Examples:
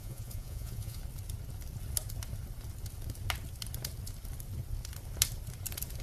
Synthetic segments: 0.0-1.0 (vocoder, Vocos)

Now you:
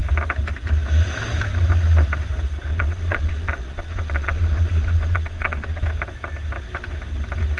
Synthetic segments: 2.7-5.8 (vocoder, Vocos)

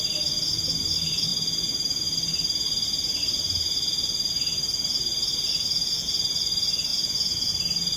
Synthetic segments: 6.9-7.5 (vocoder, Vocos)

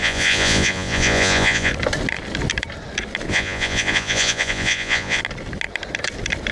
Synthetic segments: 0.0-1.7 (vocoder, Vocos); 3.3-5.2

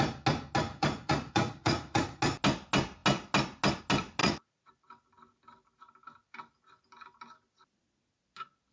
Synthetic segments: 0.7-2.0 (vocoder, Vocos); 4.2-4.7

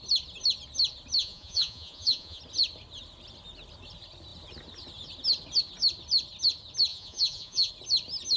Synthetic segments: 1.2-2.4 (vocoder, Vocos); 6.9-7.7